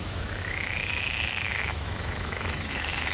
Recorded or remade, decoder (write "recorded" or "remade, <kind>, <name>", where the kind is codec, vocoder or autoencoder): remade, autoencoder, DAC-VAE